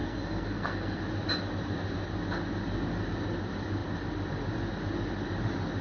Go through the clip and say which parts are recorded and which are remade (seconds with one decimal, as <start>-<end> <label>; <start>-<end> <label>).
0.0-1.0 remade; 1.0-5.8 recorded